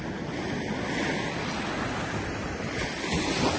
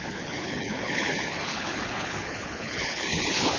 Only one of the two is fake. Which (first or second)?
second